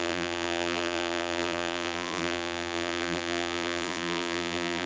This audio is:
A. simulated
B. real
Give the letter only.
A